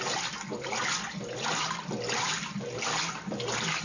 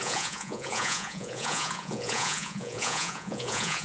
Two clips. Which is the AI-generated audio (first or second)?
second